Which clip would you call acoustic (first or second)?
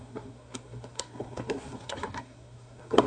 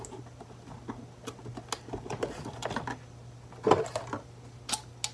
second